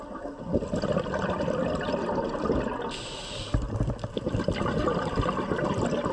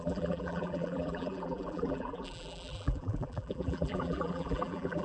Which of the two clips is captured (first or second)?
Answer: first